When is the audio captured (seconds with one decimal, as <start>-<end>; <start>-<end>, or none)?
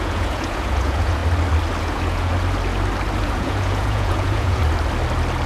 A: 1.2-1.8; 2.3-3.2; 4.6-5.5